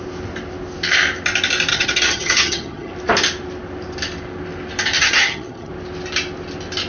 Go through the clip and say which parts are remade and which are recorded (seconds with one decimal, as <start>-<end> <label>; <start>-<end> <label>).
0.0-1.7 recorded; 1.7-2.9 remade; 2.9-5.0 recorded; 5.0-5.7 remade; 5.7-6.9 recorded